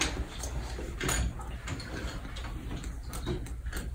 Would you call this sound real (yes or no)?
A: yes